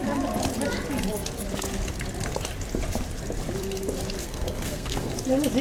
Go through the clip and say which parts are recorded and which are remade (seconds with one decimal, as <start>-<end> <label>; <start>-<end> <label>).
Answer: 0.0-4.2 recorded; 4.2-5.1 remade; 5.1-5.6 recorded